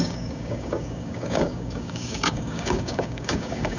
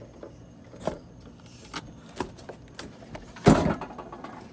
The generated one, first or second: first